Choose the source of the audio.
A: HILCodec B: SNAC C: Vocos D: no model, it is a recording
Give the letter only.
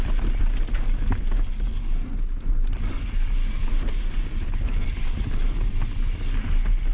D